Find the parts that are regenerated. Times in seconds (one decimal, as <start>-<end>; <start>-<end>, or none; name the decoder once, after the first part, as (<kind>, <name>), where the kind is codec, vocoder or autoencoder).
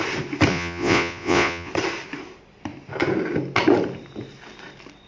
0.5-1.7 (vocoder, Vocos)